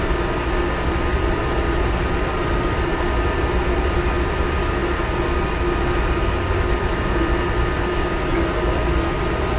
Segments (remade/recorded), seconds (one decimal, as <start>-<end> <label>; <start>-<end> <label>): 0.0-9.6 recorded